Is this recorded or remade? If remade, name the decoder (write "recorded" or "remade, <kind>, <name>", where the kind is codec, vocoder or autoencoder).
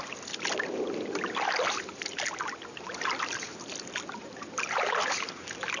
recorded